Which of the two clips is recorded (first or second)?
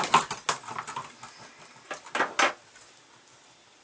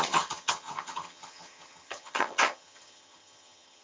first